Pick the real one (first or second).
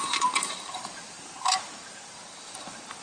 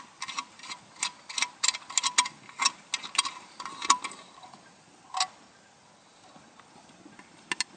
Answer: second